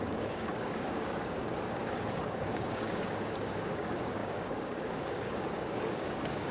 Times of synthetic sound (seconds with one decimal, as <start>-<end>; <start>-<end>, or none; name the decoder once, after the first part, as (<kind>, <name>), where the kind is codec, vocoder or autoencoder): 0.0-6.5 (codec, DAC)